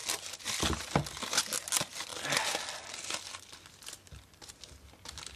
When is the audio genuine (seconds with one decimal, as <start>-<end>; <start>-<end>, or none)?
0.0-5.4